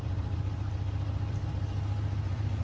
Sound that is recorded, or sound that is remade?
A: remade